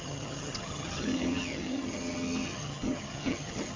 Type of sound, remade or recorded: remade